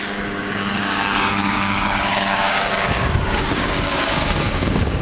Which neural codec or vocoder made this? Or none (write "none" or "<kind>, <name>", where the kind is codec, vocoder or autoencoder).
codec, DAC